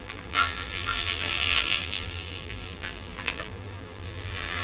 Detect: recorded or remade remade